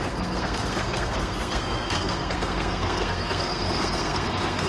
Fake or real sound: fake